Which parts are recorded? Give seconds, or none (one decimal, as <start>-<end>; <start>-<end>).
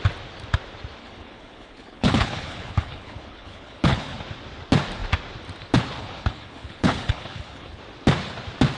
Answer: 0.0-1.0; 4.2-6.0; 7.8-8.8